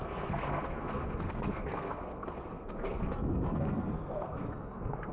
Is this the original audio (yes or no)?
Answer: no